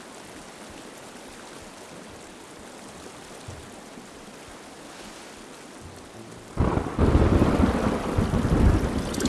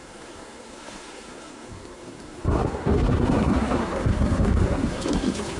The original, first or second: first